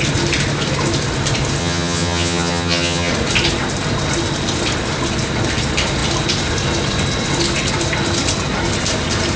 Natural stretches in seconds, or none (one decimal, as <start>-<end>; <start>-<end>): 0.0-1.6; 3.1-9.4